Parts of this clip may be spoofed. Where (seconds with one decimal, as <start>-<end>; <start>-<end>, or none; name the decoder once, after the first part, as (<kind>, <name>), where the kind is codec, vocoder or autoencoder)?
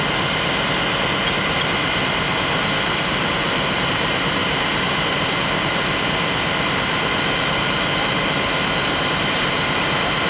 4.4-5.6 (vocoder, BigVGAN v2)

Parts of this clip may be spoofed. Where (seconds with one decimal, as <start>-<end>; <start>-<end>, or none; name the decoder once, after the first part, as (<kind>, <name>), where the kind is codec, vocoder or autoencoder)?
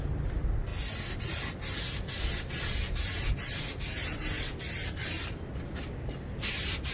none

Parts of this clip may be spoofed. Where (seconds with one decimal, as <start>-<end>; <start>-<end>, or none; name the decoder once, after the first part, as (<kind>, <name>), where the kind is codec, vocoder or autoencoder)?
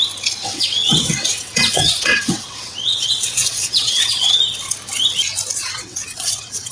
0.4-4.4 (vocoder, WaveNeXt); 5.6-6.7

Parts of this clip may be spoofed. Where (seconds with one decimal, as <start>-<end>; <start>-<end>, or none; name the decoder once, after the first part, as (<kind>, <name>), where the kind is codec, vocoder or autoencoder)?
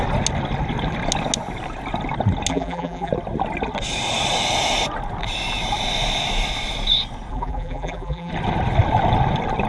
2.5-3.1 (vocoder, BigVGAN v2); 7.3-8.3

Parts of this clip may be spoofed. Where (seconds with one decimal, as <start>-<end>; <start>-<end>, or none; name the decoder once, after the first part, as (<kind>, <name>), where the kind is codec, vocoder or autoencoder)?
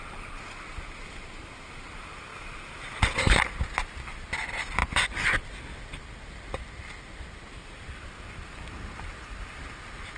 none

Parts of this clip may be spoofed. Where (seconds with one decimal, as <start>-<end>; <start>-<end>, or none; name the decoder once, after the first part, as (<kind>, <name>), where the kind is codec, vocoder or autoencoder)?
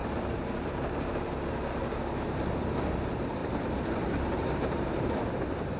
0.0-1.2 (vocoder, BigVGAN v2); 3.4-5.2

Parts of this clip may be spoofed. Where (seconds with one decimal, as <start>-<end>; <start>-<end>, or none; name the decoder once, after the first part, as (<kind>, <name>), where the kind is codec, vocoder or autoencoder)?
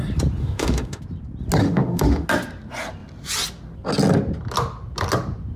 0.4-1.0 (autoencoder, DAC-VAE); 1.6-2.3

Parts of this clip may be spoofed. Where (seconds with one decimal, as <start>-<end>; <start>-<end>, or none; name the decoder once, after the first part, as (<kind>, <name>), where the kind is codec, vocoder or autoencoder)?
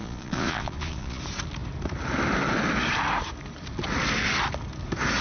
0.0-1.2 (vocoder, Vocos)